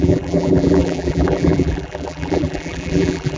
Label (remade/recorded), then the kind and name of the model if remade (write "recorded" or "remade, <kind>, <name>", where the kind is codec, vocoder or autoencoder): remade, vocoder, BigVGAN v2